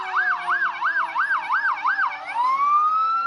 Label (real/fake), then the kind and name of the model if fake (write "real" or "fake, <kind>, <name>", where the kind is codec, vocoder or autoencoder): real